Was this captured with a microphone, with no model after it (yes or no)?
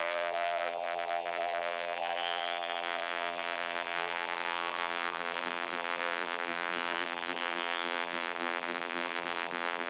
no